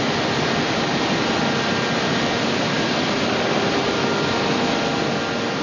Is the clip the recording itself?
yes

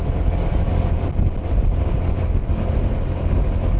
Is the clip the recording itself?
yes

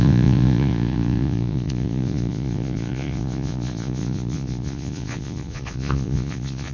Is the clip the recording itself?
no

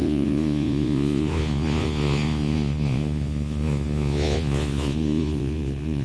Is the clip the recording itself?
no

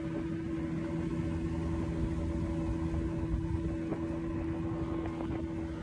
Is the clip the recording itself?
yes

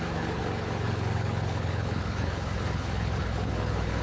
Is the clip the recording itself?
no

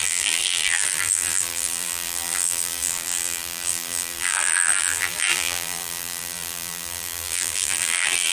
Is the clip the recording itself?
no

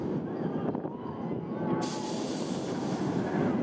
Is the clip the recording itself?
yes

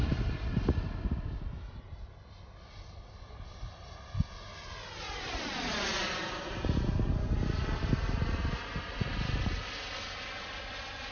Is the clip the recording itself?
yes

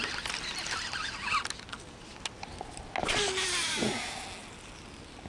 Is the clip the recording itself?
yes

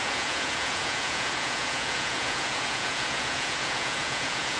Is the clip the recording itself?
no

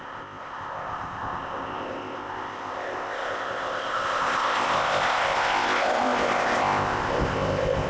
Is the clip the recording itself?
no